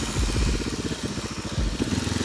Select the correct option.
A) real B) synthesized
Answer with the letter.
A